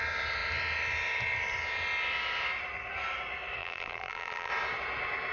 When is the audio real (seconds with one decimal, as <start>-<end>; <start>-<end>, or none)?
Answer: 0.0-3.6; 4.5-5.3